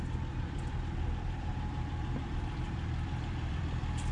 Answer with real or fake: fake